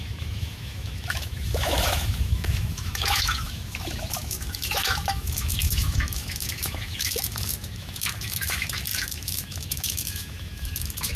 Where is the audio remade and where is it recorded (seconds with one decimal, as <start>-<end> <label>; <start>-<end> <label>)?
0.0-11.2 remade